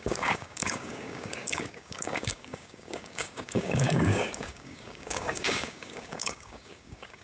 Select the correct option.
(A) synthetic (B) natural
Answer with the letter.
A